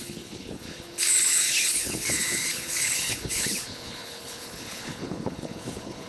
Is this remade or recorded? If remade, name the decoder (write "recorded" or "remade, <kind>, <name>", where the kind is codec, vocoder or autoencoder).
remade, codec, HILCodec